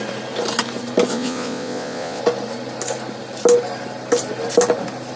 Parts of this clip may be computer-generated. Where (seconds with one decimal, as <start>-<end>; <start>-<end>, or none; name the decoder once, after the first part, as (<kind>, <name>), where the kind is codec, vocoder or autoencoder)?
1.1-2.2 (vocoder, Vocos)